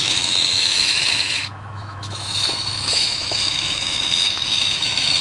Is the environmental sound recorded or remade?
remade